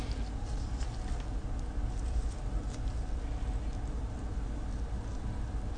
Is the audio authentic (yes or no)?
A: yes